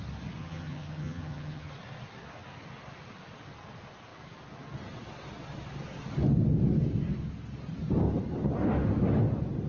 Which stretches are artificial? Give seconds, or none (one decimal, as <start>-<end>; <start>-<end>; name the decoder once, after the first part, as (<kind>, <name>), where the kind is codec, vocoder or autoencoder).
0.4-1.7 (vocoder, HiFi-GAN)